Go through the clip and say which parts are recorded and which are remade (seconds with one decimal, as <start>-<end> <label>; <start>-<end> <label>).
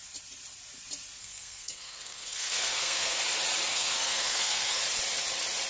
0.0-1.2 recorded; 1.2-3.2 remade; 3.2-3.7 recorded; 3.7-4.8 remade; 4.8-5.7 recorded